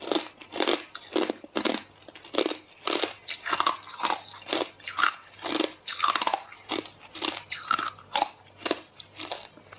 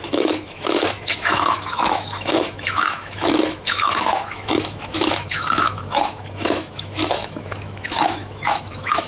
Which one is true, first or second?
first